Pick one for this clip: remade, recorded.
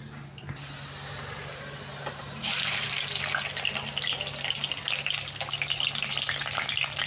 remade